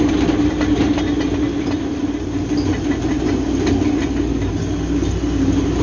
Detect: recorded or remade recorded